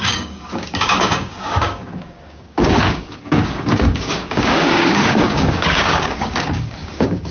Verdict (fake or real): fake